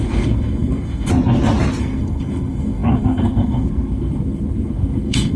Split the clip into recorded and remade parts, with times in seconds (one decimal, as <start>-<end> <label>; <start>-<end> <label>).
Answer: 0.0-1.1 remade; 1.1-1.8 recorded; 1.8-5.4 remade